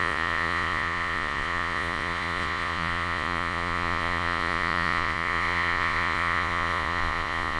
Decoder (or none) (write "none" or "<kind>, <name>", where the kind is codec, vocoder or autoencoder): vocoder, Vocos